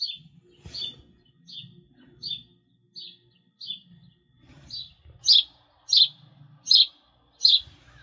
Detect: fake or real real